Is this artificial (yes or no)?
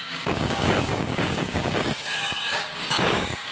yes